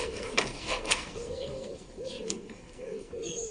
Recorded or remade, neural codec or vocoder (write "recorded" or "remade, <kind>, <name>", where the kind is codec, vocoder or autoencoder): remade, codec, SNAC